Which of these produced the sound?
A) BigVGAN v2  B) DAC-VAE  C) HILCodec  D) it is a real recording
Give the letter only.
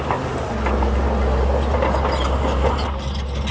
D